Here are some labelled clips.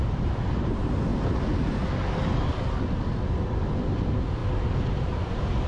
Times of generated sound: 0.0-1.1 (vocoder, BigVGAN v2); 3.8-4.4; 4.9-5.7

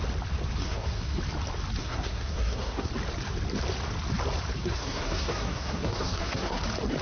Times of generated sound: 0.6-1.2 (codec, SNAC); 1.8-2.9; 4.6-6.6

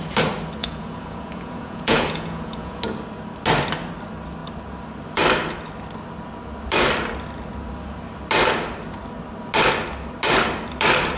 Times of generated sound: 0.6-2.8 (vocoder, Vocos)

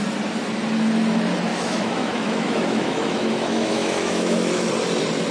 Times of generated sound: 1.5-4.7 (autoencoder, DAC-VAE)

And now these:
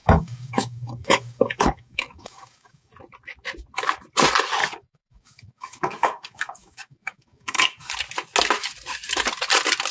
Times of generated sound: 0.0-2.9 (codec, DAC); 4.6-7.9

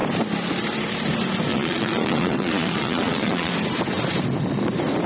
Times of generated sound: 1.5-3.5 (vocoder, Vocos)